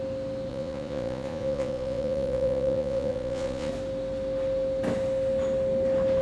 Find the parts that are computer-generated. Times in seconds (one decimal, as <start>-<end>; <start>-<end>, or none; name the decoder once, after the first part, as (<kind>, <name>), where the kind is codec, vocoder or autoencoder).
0.5-3.7 (vocoder, Vocos)